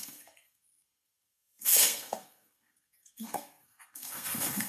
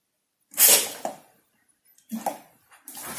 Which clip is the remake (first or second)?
first